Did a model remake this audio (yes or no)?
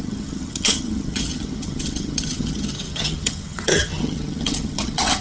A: yes